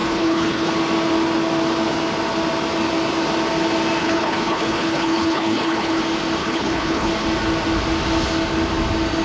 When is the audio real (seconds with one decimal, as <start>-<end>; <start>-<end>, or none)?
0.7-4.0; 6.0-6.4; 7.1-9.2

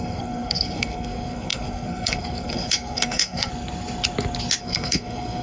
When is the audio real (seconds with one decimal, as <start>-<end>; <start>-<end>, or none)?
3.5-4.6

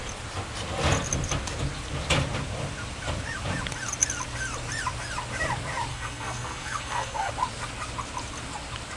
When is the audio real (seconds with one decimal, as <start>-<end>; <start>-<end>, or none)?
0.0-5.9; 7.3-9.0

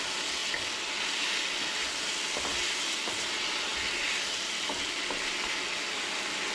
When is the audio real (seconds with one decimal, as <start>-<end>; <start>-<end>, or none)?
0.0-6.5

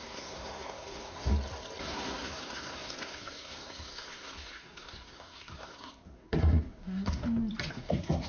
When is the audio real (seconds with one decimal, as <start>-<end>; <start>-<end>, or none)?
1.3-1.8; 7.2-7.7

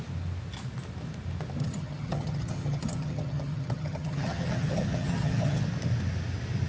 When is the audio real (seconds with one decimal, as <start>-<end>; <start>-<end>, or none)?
0.0-1.6; 5.6-6.7